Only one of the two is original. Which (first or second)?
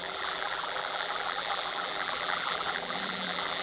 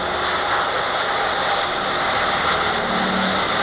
second